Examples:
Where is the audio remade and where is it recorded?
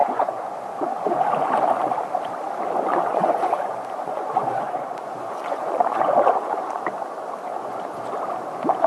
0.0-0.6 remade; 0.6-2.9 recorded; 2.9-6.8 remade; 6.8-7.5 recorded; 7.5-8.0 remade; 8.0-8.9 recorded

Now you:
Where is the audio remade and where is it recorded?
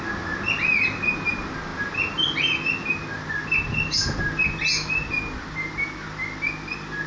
0.0-7.1 recorded